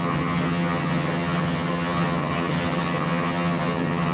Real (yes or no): no